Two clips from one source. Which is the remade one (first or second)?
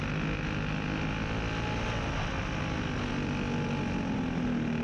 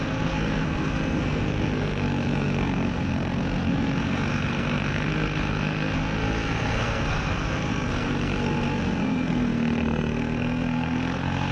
second